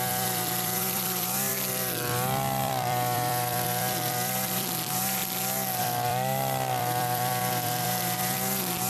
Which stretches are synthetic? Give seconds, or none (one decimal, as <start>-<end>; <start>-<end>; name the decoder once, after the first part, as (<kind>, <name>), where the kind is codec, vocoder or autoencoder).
0.0-1.5 (vocoder, BigVGAN v2); 2.6-5.2; 5.8-8.9